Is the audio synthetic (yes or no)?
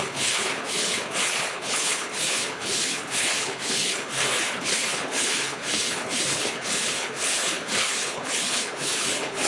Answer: yes